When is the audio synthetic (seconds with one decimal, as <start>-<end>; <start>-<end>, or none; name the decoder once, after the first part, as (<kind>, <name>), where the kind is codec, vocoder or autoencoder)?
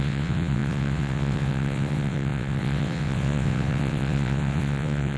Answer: 0.0-5.2 (vocoder, WaveNeXt)